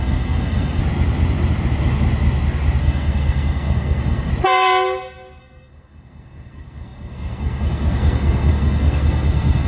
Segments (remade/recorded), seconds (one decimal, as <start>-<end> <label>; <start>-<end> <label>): 0.0-0.8 remade; 0.8-2.8 recorded; 2.8-4.3 remade; 4.3-5.4 recorded; 5.4-9.7 remade